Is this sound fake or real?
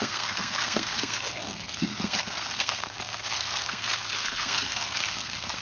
fake